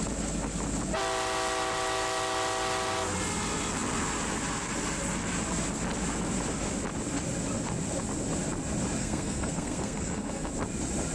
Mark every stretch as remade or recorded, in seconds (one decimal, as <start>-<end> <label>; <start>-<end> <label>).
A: 0.0-9.0 recorded; 9.0-10.5 remade; 10.5-11.1 recorded